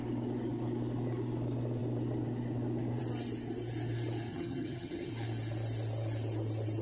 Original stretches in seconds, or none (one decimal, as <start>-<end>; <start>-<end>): 0.0-4.3; 5.1-6.8